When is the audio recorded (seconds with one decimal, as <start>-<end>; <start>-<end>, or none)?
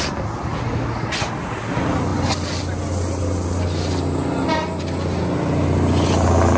0.0-6.6